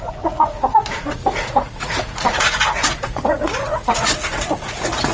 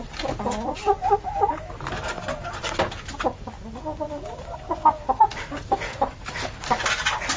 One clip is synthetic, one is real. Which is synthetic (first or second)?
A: first